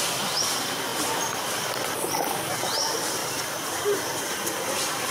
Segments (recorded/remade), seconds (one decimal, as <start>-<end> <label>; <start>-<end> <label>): 0.0-3.2 recorded; 3.2-4.2 remade; 4.2-5.1 recorded